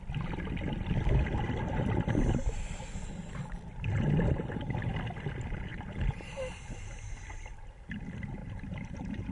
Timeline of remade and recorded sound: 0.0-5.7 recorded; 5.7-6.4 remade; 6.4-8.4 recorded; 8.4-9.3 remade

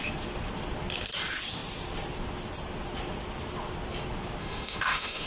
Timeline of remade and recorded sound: 0.0-4.4 recorded; 4.4-5.3 remade

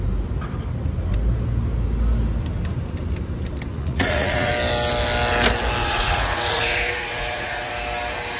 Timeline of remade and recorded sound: 0.0-3.7 recorded; 3.7-4.5 remade; 4.5-5.8 recorded; 5.8-7.7 remade; 7.7-8.4 recorded

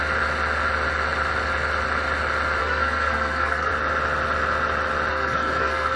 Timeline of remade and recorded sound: 0.0-2.6 recorded; 2.6-3.7 remade; 3.7-5.1 recorded; 5.1-6.0 remade

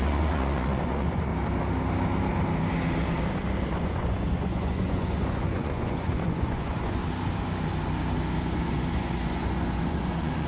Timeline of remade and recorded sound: 0.0-1.3 remade; 1.3-3.8 recorded; 3.8-7.0 remade; 7.0-8.4 recorded; 8.4-10.5 remade

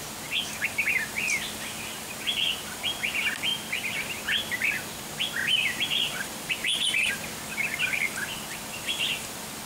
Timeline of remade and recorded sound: 0.0-3.5 recorded; 3.5-4.0 remade; 4.0-5.4 recorded; 5.4-7.1 remade; 7.1-9.7 recorded

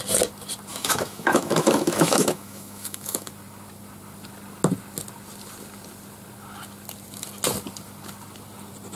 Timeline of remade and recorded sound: 0.0-0.7 recorded; 0.7-3.3 remade; 3.3-9.0 recorded